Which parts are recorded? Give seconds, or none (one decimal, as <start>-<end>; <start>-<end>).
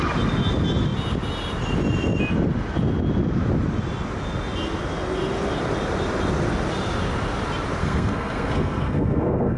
0.0-7.8